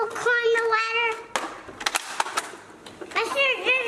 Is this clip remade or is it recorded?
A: recorded